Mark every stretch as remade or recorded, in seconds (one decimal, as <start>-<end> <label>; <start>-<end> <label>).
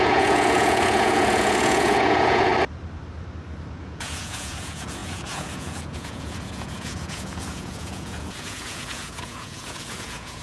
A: 0.0-2.5 remade; 2.5-3.8 recorded; 3.8-10.4 remade